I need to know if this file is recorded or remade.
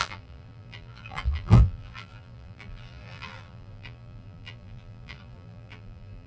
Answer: remade